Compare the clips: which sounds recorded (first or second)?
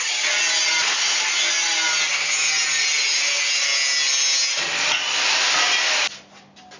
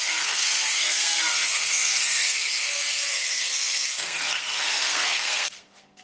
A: first